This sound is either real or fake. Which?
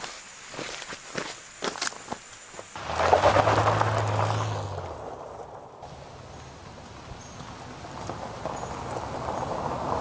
real